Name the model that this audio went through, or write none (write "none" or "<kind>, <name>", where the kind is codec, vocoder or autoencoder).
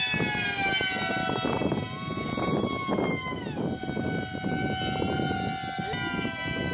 none